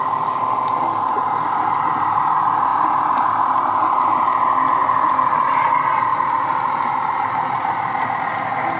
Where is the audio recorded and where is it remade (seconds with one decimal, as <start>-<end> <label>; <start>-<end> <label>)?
0.0-8.8 recorded